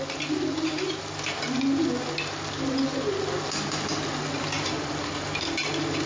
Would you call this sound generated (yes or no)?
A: no